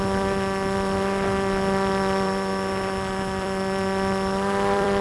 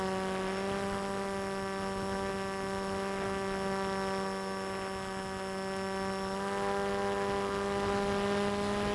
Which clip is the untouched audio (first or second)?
second